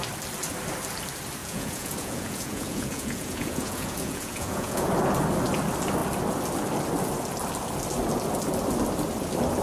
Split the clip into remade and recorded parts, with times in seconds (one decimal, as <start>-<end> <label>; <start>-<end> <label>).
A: 0.0-1.4 recorded; 1.4-4.9 remade; 4.9-9.6 recorded